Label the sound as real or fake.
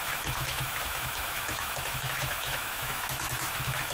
fake